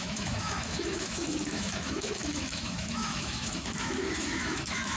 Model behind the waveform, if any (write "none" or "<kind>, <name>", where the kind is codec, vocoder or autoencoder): autoencoder, DAC-VAE